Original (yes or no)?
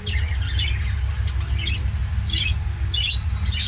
yes